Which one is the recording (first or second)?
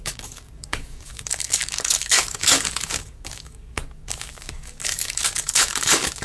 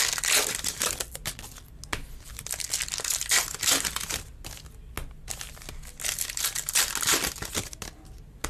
second